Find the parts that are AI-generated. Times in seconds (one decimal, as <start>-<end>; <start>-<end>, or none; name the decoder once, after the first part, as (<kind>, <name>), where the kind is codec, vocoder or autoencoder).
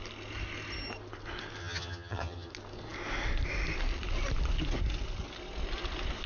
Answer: 1.6-2.5 (vocoder, HiFi-GAN)